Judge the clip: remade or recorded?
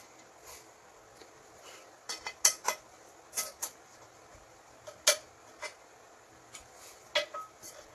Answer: recorded